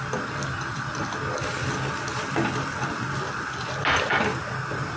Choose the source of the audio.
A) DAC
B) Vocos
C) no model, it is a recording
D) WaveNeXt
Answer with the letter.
C